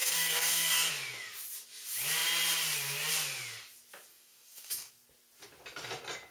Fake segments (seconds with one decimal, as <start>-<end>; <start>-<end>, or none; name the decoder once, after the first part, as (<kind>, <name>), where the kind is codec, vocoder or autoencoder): 0.0-0.9 (codec, DAC); 4.1-4.9